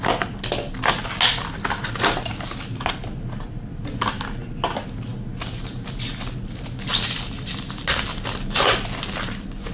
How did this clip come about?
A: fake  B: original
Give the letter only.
B